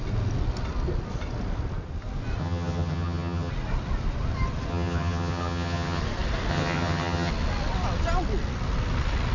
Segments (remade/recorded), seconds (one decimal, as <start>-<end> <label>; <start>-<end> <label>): 0.0-2.4 recorded; 2.4-3.5 remade; 3.5-4.7 recorded; 4.7-6.0 remade; 6.0-6.5 recorded; 6.5-7.3 remade; 7.3-9.3 recorded